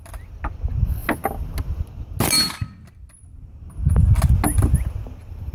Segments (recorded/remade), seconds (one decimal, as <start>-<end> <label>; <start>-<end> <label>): 0.0-5.5 recorded